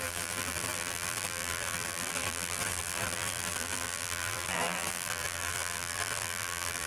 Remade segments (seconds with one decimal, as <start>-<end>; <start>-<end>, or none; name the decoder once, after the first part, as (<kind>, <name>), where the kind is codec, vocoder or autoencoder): 0.0-6.9 (vocoder, BigVGAN v2)